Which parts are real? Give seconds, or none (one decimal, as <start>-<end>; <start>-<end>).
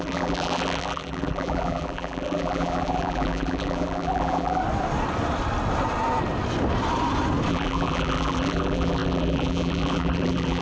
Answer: 4.6-7.5